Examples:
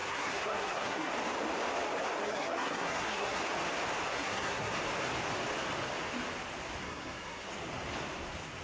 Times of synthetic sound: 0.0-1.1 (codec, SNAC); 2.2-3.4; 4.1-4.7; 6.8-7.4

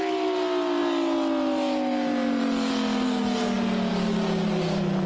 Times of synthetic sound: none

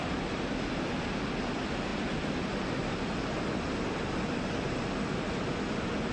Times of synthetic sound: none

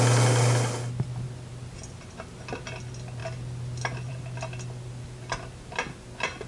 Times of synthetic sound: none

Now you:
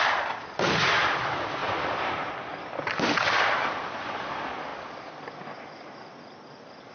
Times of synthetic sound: none

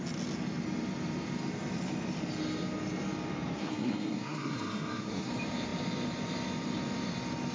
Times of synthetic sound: 3.6-5.3 (codec, SNAC)